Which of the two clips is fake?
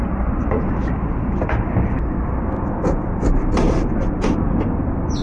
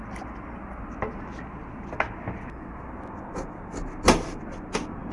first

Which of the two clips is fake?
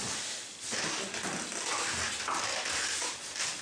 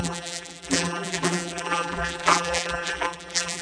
second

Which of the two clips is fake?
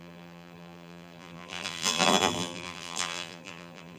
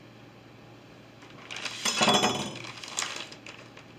first